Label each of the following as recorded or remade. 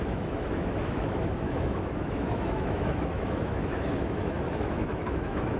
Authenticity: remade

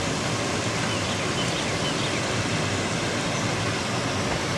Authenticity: recorded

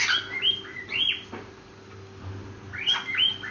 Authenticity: recorded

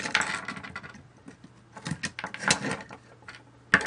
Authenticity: recorded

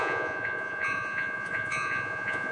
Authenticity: remade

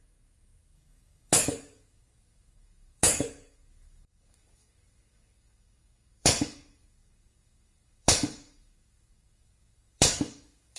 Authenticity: remade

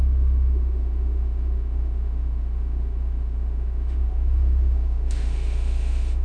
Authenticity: remade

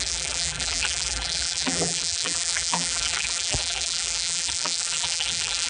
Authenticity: remade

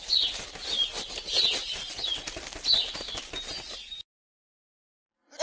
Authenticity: recorded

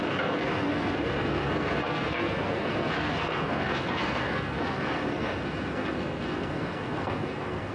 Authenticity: remade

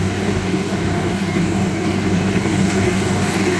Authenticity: remade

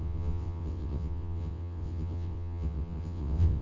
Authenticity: remade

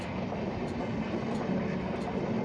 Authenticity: recorded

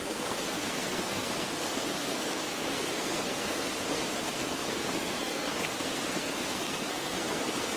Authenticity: remade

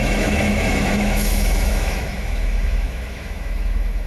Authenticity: remade